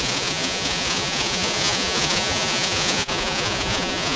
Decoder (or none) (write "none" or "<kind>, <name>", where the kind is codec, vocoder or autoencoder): vocoder, Vocos